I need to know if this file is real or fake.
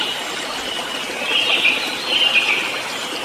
real